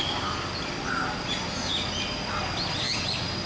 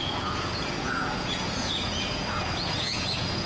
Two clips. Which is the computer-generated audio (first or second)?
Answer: second